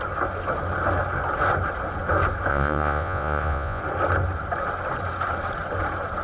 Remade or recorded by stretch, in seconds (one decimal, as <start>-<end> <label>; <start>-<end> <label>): 0.0-2.5 recorded; 2.5-3.8 remade; 3.8-6.2 recorded